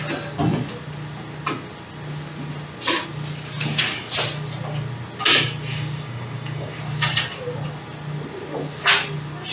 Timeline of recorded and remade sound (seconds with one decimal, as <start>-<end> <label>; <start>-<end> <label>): 0.0-5.7 recorded; 5.7-6.8 remade; 6.8-9.5 recorded